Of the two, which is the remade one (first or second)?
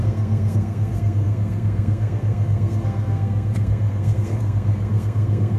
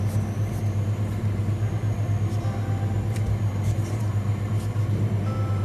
first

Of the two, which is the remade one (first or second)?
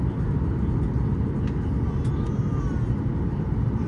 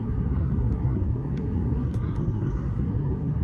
second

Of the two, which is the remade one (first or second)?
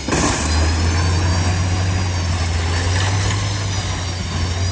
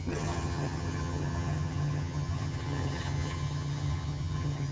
second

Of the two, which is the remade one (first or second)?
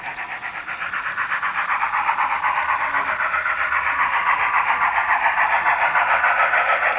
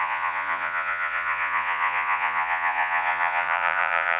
second